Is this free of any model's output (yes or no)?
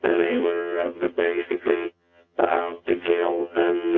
no